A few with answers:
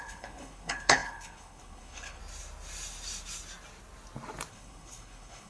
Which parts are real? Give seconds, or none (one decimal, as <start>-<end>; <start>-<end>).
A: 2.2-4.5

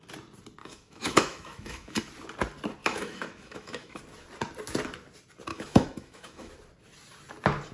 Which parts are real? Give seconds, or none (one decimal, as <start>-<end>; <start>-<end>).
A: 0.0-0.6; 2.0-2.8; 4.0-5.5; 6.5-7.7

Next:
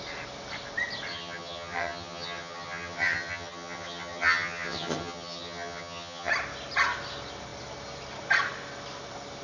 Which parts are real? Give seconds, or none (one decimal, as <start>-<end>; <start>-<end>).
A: 0.0-1.1; 6.3-9.4

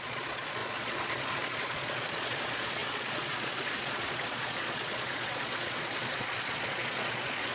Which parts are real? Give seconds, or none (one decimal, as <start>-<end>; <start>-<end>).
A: none

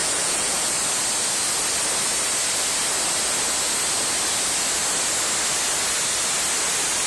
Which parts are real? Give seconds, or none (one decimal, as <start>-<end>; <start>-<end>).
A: 0.7-7.1